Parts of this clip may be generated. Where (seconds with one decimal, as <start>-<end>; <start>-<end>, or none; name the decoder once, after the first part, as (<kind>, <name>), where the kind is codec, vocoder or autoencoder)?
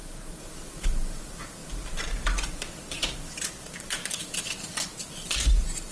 0.0-1.6 (vocoder, BigVGAN v2); 2.9-5.9